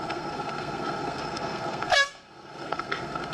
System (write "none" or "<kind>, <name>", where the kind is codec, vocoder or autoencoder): codec, SNAC